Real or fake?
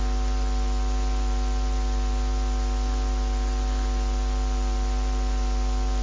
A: real